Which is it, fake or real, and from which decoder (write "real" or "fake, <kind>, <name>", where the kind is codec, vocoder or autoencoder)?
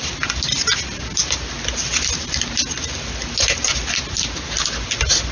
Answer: real